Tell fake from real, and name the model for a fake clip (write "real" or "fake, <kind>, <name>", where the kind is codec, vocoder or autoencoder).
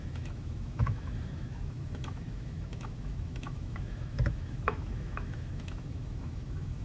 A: fake, autoencoder, DAC-VAE